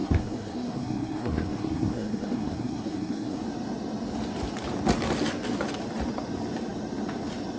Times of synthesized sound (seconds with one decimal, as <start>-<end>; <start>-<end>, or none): 0.0-3.4